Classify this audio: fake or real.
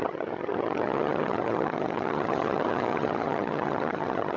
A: fake